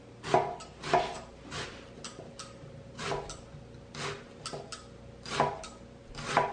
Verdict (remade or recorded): recorded